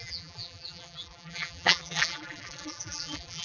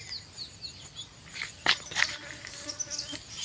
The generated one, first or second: first